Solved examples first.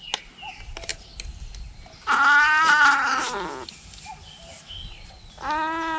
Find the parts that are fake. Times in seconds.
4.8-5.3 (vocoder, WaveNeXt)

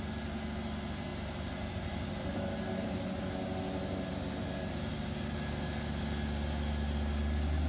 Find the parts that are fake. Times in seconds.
none

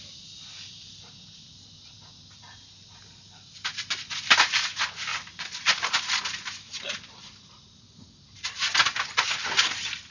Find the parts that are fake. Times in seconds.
none

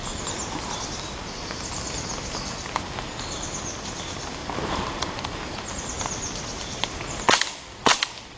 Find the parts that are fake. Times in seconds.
none